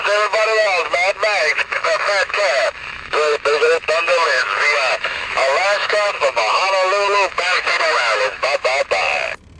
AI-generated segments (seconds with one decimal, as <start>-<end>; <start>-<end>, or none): 0.0-8.7